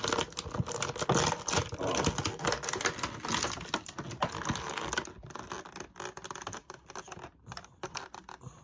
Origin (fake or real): real